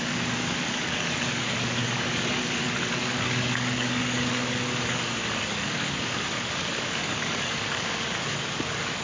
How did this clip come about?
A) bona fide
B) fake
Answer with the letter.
B